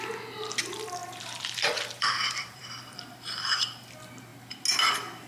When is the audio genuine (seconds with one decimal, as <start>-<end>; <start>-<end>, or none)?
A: 0.0-1.0; 3.1-5.3